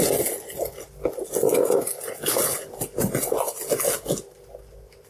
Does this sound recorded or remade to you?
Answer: recorded